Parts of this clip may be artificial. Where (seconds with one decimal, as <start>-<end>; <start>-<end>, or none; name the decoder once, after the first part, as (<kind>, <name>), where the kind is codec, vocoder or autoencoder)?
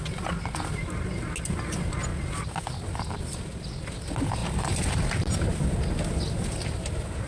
none